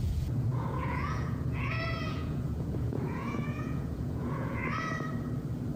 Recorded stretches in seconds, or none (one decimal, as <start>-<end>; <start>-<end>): 4.6-5.8